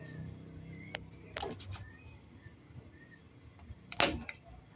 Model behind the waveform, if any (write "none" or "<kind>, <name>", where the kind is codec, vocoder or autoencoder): none